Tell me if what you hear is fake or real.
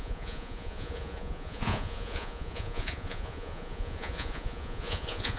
fake